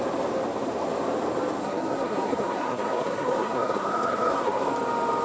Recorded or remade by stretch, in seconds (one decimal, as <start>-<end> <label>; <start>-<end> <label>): 0.0-1.6 recorded; 1.6-4.7 remade; 4.7-5.2 recorded